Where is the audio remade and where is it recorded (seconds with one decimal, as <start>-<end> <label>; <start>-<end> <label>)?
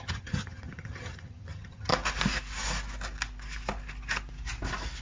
0.0-1.9 remade; 1.9-5.0 recorded